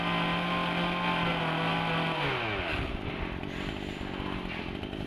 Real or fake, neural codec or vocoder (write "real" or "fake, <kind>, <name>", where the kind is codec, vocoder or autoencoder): real